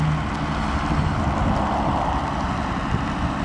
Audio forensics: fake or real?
real